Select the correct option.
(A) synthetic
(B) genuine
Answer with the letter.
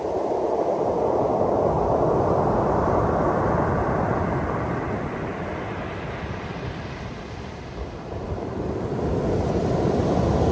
B